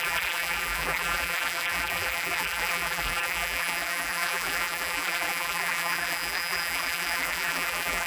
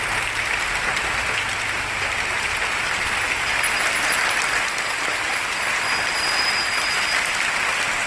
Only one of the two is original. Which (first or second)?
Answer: second